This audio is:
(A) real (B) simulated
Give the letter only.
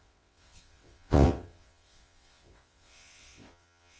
B